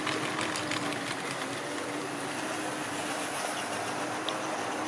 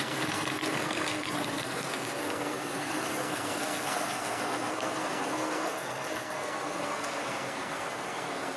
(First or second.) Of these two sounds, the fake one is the second